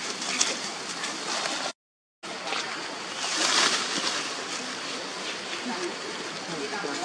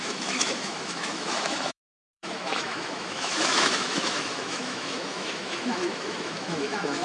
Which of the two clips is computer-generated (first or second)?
second